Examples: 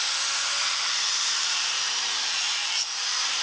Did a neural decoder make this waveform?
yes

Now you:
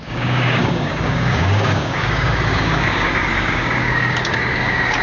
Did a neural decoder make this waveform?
yes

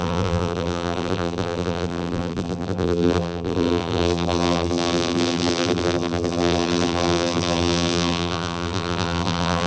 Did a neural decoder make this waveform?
yes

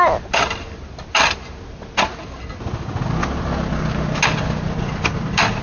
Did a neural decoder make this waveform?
no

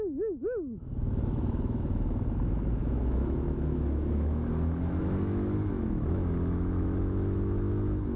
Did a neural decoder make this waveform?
yes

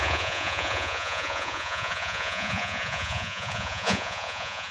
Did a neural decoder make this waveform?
yes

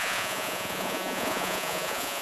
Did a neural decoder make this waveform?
yes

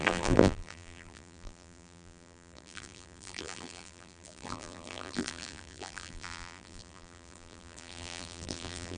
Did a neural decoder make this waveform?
yes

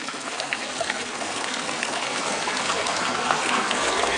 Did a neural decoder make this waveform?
yes